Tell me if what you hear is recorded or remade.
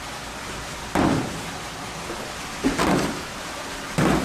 recorded